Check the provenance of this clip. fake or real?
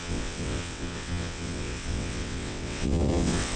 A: fake